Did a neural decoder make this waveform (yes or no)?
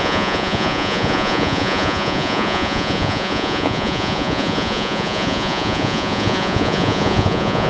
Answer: yes